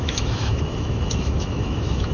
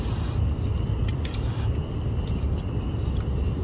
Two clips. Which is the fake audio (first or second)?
first